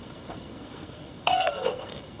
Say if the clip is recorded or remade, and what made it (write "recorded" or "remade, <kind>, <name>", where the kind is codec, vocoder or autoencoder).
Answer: remade, codec, SNAC